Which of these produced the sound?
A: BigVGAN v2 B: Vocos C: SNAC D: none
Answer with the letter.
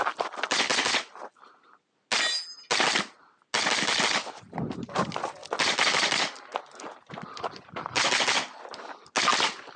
D